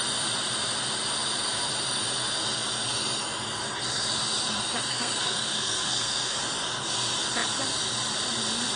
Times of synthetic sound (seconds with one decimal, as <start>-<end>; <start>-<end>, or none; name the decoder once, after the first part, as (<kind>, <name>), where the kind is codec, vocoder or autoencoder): 4.9-6.4 (codec, SNAC)